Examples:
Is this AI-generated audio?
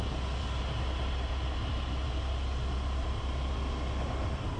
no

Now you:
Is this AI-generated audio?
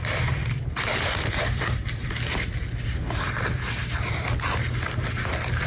yes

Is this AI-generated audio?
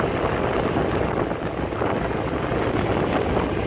no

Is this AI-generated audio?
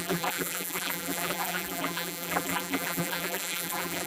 yes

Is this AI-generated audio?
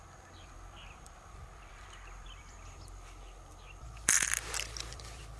yes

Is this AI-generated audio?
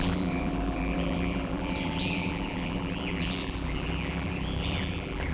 yes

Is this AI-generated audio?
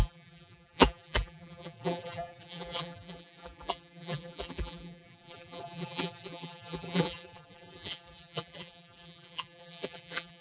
yes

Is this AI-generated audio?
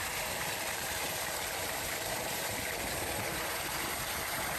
yes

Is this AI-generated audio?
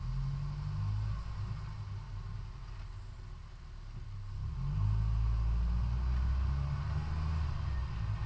no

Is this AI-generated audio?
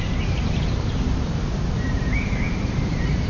yes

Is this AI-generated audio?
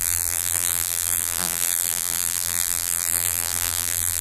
yes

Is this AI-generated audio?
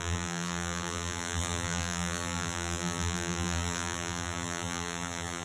yes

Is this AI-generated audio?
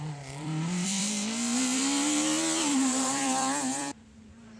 yes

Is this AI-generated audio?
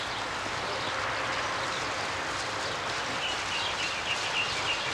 no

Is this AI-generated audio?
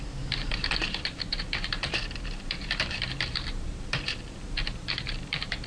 yes